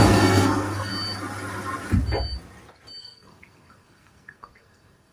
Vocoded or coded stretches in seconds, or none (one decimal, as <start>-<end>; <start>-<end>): 0.0-0.9; 3.0-5.1